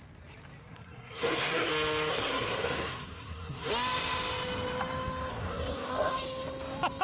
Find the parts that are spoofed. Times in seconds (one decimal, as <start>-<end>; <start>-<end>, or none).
0.6-1.7; 2.1-3.7; 5.3-5.9